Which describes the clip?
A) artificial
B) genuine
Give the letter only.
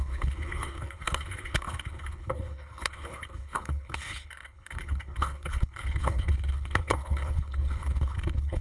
A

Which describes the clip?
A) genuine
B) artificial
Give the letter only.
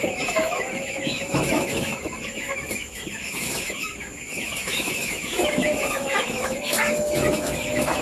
B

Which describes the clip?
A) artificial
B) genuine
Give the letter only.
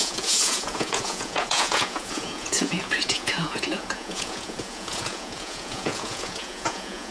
A